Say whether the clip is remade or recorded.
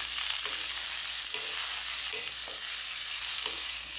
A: recorded